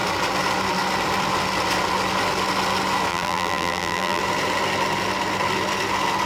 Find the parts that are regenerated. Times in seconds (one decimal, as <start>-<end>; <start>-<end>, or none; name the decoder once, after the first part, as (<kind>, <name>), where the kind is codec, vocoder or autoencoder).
3.1-4.2 (vocoder, BigVGAN v2)